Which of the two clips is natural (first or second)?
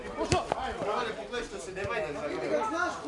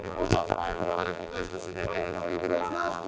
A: first